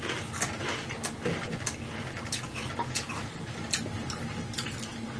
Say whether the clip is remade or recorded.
recorded